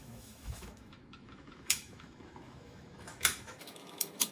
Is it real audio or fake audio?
fake